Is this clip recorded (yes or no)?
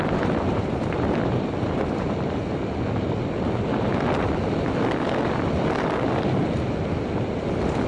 yes